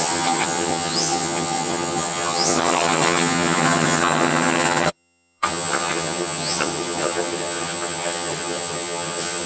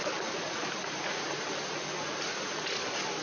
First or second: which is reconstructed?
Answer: first